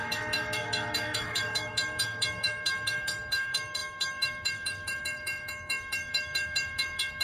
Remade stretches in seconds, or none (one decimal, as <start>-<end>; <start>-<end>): 0.0-7.2